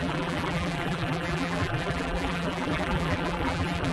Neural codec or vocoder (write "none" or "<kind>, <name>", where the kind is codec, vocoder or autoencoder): vocoder, BigVGAN v2